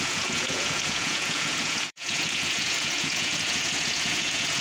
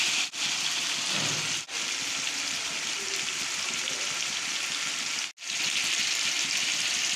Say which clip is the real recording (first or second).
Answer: second